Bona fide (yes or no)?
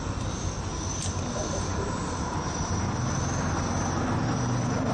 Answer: yes